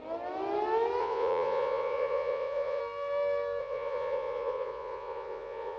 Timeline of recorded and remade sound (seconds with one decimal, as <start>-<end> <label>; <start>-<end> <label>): 0.0-1.0 recorded; 1.0-2.8 remade; 2.8-3.6 recorded; 3.6-5.8 remade